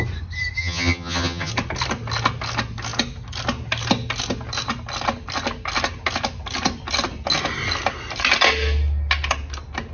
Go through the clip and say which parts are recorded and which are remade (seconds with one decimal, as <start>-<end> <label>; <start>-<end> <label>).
0.0-0.6 recorded; 0.6-1.5 remade; 1.5-9.9 recorded